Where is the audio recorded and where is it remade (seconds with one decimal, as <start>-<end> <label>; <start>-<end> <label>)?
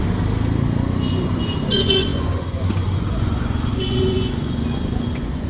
0.0-1.1 recorded; 1.1-5.5 remade